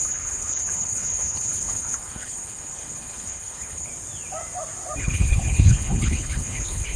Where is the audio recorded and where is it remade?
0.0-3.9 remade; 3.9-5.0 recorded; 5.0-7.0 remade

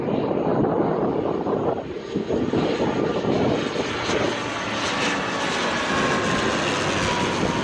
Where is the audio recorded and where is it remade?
0.0-7.6 recorded

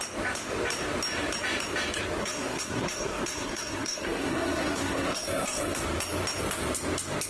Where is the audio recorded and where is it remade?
0.0-2.2 recorded; 2.2-5.8 remade; 5.8-7.3 recorded

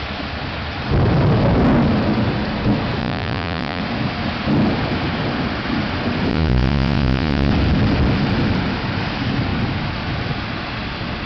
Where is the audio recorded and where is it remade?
0.0-3.0 recorded; 3.0-3.8 remade; 3.8-6.3 recorded; 6.3-7.5 remade; 7.5-11.3 recorded

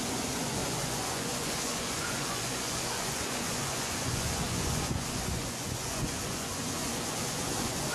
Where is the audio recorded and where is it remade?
0.0-7.9 remade

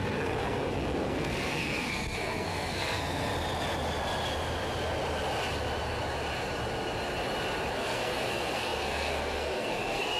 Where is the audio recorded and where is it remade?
0.0-3.3 remade; 3.3-7.7 recorded; 7.7-10.2 remade